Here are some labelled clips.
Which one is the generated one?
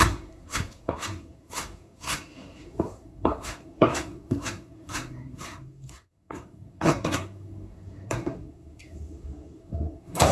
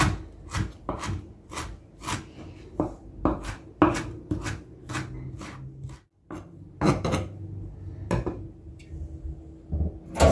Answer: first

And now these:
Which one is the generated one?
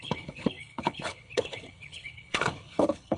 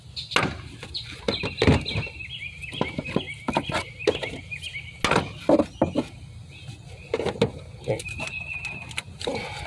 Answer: first